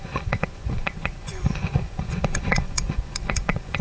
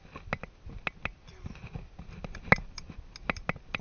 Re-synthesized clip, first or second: first